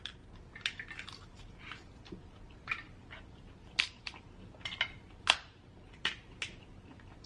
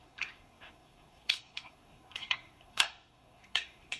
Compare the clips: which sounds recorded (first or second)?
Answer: first